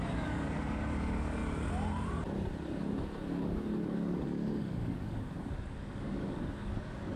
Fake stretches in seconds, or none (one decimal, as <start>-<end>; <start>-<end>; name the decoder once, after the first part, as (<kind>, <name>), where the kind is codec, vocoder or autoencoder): 0.0-1.4 (codec, DAC); 3.3-7.2